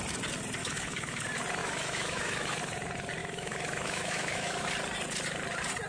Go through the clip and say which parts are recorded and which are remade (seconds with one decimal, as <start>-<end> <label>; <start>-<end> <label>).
0.0-0.6 recorded; 0.6-1.2 remade; 1.2-1.6 recorded; 1.6-2.6 remade; 2.6-3.2 recorded; 3.2-4.7 remade; 4.7-5.9 recorded